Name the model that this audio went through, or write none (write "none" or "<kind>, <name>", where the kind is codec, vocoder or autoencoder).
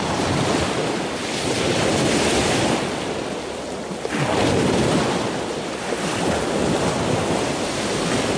none